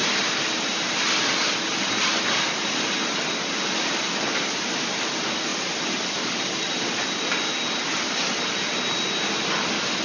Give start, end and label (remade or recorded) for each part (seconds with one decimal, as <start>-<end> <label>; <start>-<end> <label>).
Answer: 0.0-1.6 remade; 1.6-5.5 recorded; 5.5-6.4 remade; 6.4-10.0 recorded